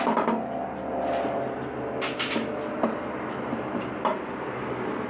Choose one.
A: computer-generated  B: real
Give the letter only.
B